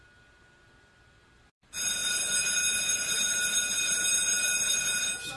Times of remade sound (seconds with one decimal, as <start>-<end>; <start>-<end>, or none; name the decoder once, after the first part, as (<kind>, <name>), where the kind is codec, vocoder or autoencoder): none